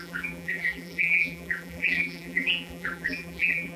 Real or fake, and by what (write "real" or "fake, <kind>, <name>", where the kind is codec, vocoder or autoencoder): fake, vocoder, BigVGAN v2